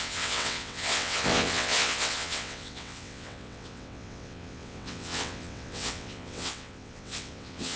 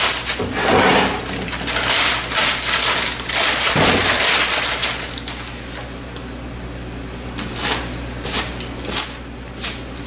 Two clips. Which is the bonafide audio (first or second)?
second